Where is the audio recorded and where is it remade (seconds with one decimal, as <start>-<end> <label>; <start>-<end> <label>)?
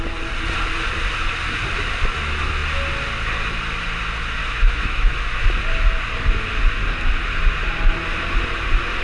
0.0-4.4 recorded; 4.4-5.1 remade; 5.1-9.0 recorded